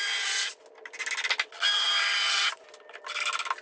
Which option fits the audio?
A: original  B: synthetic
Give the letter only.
A